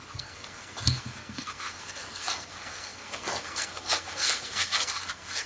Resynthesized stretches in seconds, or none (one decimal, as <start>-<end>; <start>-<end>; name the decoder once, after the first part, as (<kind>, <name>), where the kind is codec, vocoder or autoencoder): 0.0-5.5 (codec, SNAC)